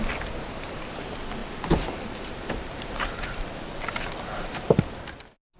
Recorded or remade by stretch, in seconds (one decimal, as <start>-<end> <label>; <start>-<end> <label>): 0.0-1.4 recorded; 1.4-4.8 remade; 4.8-5.6 recorded